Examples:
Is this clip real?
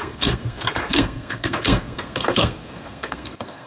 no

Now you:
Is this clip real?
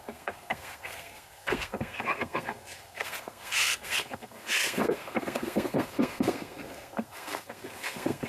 no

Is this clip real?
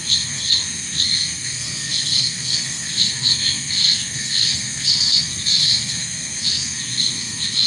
no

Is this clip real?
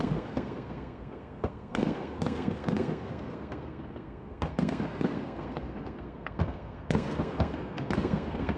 no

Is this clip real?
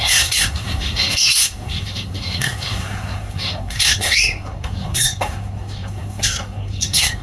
no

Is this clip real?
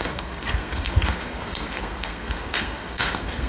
no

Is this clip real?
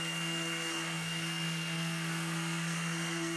no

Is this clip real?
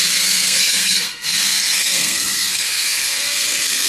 no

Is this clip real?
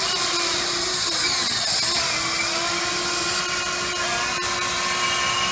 yes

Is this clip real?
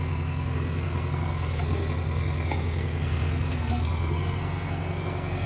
no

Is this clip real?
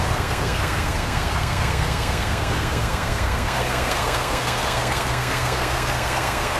no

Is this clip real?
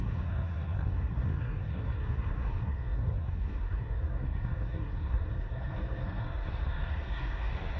no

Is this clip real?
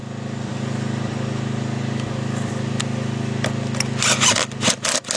yes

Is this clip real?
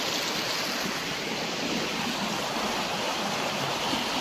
yes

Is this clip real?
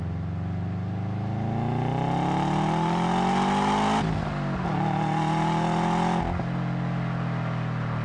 yes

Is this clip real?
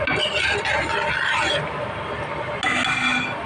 yes